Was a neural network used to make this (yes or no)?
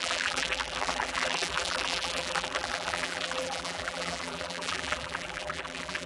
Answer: yes